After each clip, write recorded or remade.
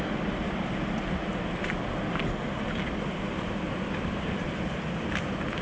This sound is recorded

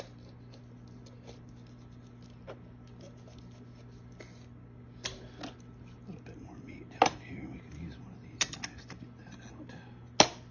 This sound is recorded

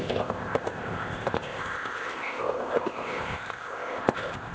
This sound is remade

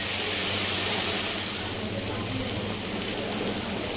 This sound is recorded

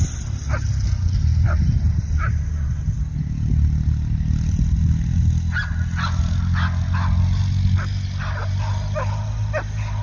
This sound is recorded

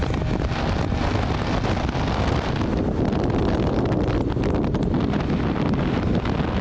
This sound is recorded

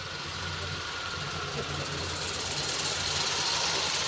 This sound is recorded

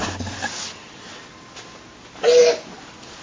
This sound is recorded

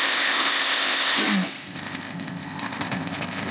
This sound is remade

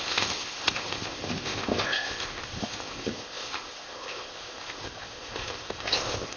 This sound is remade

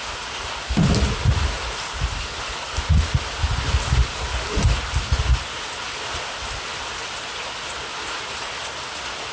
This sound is recorded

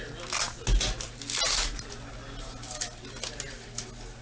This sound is recorded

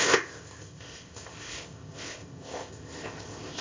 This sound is remade